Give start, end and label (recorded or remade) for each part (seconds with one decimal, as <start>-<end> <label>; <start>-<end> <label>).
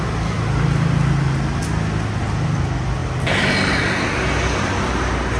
0.0-5.4 recorded